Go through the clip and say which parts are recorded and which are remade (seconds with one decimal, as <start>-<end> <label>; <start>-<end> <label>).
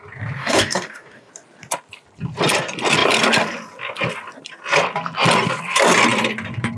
0.0-0.4 recorded; 0.4-1.3 remade; 1.3-6.8 recorded